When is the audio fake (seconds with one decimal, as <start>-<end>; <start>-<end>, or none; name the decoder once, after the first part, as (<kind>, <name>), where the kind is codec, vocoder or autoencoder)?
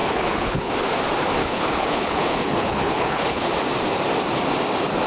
0.0-0.7 (codec, HILCodec); 1.4-3.5